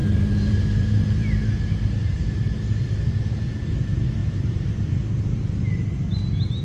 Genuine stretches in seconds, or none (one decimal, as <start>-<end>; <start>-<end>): 3.1-4.2; 5.6-6.6